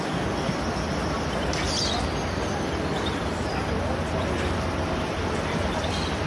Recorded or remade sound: recorded